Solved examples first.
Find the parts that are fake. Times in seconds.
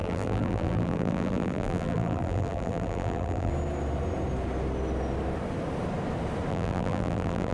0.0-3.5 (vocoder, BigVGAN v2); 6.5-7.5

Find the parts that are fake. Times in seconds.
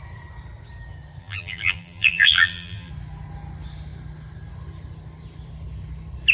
1.2-2.9 (vocoder, BigVGAN v2)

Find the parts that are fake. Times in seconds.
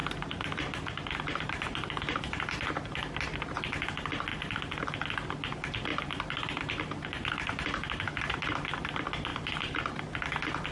0.0-3.6 (vocoder, BigVGAN v2); 4.3-4.9; 5.9-8.9; 9.3-10.1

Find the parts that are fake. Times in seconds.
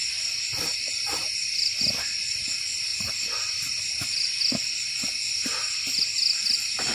none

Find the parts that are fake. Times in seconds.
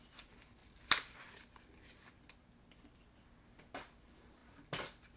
0.0-0.6 (vocoder, BigVGAN v2); 3.7-5.2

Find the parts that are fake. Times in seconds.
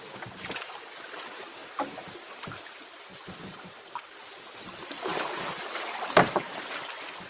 1.6-2.3 (vocoder, BigVGAN v2); 3.1-3.9; 5.1-6.8